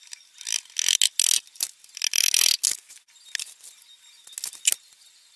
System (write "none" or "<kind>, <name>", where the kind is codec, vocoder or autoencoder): none